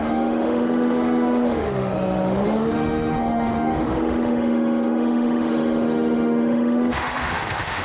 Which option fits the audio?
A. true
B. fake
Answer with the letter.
B